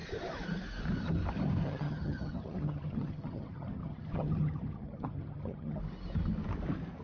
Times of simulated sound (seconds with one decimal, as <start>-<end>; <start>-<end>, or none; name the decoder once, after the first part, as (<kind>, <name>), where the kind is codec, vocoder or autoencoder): 1.6-5.8 (vocoder, HiFi-GAN)